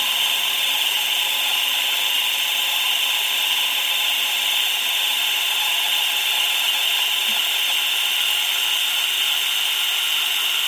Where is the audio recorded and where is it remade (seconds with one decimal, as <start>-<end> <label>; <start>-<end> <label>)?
0.0-1.5 recorded; 1.5-2.0 remade; 2.0-8.1 recorded; 8.1-8.7 remade; 8.7-10.7 recorded